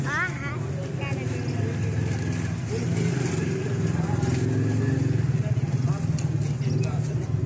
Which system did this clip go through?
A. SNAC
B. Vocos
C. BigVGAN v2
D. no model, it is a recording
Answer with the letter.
D